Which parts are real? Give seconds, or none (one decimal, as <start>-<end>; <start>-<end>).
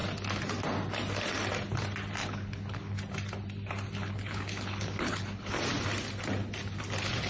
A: 0.0-2.2; 3.0-4.0; 5.6-7.3